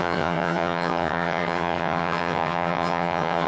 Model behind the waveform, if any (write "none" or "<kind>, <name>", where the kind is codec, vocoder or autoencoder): vocoder, HiFi-GAN